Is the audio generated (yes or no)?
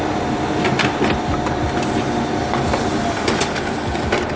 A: no